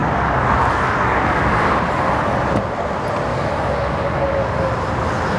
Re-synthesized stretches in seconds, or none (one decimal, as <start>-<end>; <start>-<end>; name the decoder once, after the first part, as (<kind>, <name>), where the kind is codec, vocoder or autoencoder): 0.0-1.6 (codec, DAC); 3.3-4.7